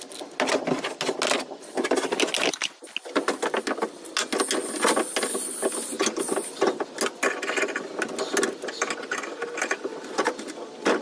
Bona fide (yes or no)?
yes